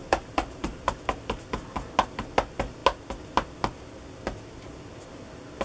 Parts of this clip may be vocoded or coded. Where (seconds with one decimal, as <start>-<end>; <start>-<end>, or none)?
0.0-0.9